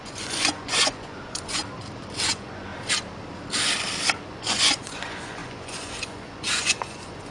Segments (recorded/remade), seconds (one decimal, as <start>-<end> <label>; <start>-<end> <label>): 0.0-1.6 remade; 1.6-2.2 recorded; 2.2-2.7 remade; 2.7-4.3 recorded; 4.3-7.3 remade